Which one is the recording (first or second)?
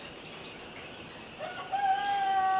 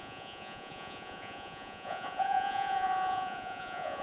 first